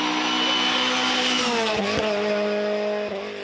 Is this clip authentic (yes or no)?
yes